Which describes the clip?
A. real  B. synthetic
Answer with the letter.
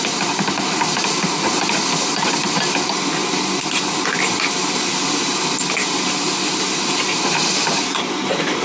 A